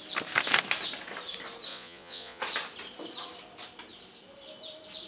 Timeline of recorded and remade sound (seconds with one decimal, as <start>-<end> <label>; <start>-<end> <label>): 0.0-1.7 recorded; 1.7-2.4 remade; 2.4-5.1 recorded